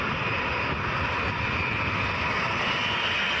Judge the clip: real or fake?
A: real